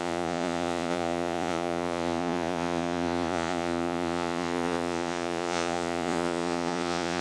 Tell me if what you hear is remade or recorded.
remade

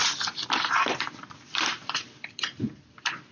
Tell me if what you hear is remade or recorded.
remade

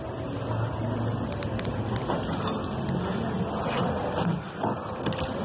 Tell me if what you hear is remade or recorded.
recorded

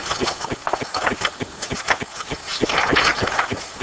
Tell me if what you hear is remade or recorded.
recorded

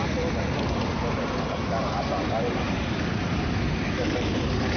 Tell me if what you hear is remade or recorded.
recorded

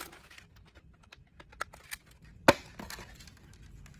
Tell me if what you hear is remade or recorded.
recorded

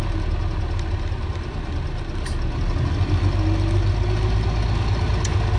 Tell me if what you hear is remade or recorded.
recorded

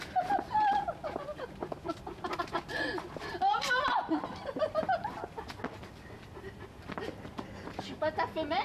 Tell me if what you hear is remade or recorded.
recorded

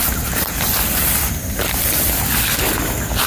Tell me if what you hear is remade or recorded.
recorded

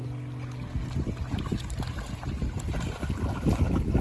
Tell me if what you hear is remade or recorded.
recorded